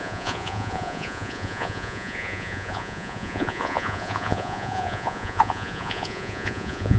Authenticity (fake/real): fake